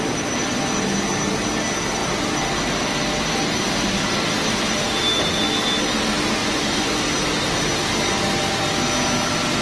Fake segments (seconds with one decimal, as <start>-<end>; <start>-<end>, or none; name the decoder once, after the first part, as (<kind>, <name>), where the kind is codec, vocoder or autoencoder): 6.4-7.0 (vocoder, Vocos)